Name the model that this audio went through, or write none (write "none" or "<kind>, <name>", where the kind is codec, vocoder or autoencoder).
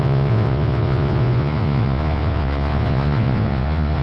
vocoder, Vocos